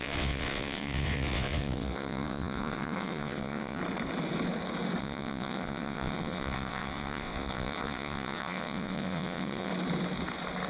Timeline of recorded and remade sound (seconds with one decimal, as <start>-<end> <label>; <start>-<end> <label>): 0.0-3.8 remade; 3.8-5.0 recorded; 5.0-9.7 remade; 9.7-10.7 recorded